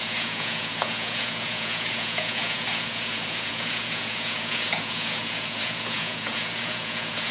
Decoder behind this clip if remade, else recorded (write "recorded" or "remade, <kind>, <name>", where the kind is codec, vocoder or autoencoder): remade, vocoder, Vocos